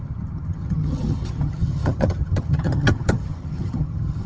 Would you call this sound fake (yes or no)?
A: yes